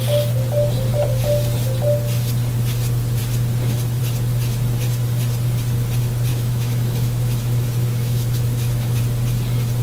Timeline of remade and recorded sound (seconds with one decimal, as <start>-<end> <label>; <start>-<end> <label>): 0.0-6.3 recorded; 6.3-9.0 remade; 9.0-9.8 recorded

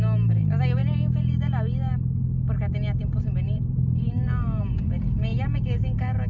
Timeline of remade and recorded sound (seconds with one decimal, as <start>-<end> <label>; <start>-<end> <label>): 0.0-6.3 recorded

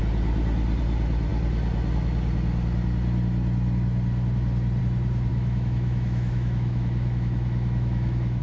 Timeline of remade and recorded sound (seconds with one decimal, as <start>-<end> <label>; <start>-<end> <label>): 0.0-5.3 recorded; 5.3-8.4 remade

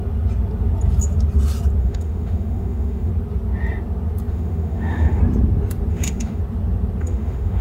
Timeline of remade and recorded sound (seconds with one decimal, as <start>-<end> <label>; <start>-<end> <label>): 0.0-1.8 recorded; 1.8-3.1 remade; 3.1-4.3 recorded; 4.3-5.2 remade; 5.2-5.9 recorded; 5.9-6.4 remade; 6.4-7.0 recorded; 7.0-7.6 remade